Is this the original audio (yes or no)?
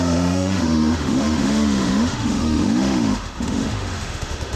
no